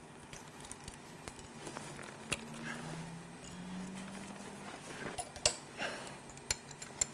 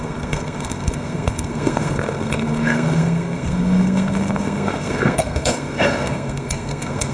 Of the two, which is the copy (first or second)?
second